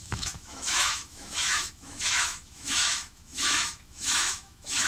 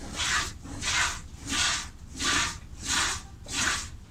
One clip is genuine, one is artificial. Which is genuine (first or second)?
second